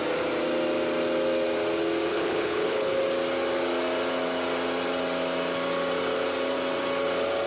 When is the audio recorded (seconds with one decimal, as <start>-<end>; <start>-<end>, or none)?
0.0-2.1; 3.0-7.5